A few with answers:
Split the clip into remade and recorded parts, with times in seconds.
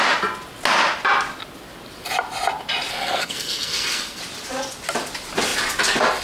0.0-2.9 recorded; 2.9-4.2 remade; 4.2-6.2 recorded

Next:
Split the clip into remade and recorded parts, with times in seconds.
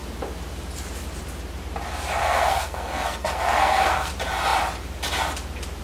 0.0-2.2 recorded; 2.2-4.1 remade; 4.1-5.8 recorded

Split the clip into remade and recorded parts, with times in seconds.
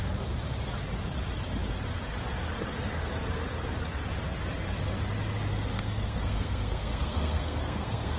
0.0-5.7 recorded; 5.7-8.2 remade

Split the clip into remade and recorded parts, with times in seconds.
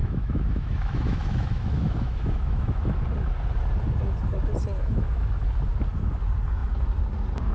0.0-3.0 remade; 3.0-4.8 recorded; 4.8-5.4 remade; 5.4-7.5 recorded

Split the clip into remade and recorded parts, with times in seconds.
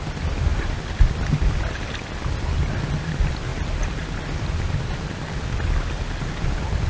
0.0-6.9 recorded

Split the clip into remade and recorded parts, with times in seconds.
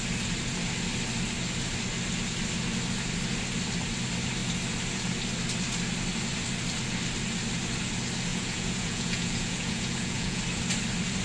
0.0-8.3 recorded; 8.3-10.4 remade; 10.4-11.2 recorded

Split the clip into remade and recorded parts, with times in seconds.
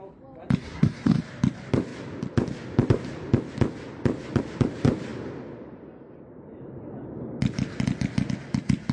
0.0-0.6 recorded; 0.6-1.2 remade; 1.2-8.9 recorded